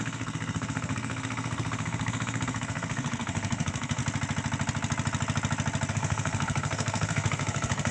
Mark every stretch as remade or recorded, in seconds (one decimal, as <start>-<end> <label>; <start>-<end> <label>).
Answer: 0.0-4.0 remade; 4.0-5.9 recorded; 5.9-7.9 remade